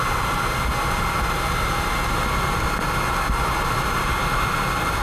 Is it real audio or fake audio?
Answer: real